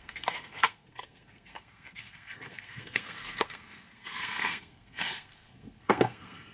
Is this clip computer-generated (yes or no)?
yes